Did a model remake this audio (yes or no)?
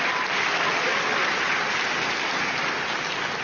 no